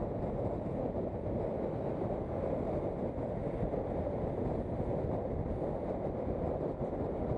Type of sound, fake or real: real